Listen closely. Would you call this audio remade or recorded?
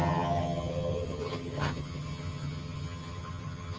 remade